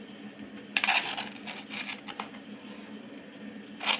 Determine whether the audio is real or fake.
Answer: real